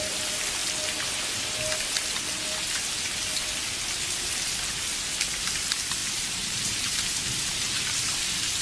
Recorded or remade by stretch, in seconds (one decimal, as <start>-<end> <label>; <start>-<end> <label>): 0.0-6.0 recorded; 6.0-7.0 remade; 7.0-8.6 recorded